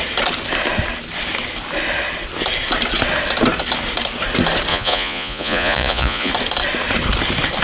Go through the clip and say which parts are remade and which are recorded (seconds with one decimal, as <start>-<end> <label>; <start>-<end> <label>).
0.0-4.7 recorded; 4.7-6.3 remade; 6.3-7.6 recorded